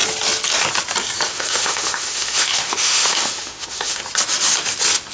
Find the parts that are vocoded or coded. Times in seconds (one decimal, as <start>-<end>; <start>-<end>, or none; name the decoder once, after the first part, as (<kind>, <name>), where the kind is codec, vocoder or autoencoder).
1.3-4.0 (autoencoder, DAC-VAE)